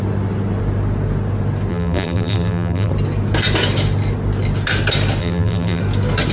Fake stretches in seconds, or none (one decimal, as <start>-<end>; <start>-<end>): 1.7-2.9; 5.2-5.8